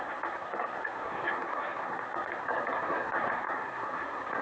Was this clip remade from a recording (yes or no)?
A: yes